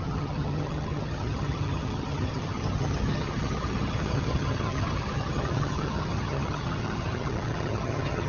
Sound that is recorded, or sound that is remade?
remade